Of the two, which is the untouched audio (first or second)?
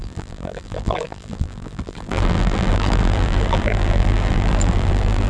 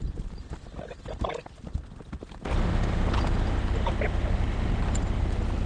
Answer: second